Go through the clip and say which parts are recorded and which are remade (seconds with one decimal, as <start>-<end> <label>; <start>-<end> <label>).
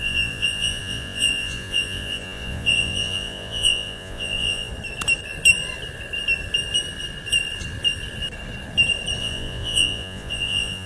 0.0-4.7 remade; 4.7-9.2 recorded; 9.2-10.9 remade